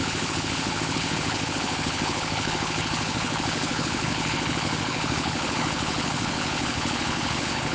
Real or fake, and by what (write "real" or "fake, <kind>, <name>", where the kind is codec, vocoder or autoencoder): fake, codec, HILCodec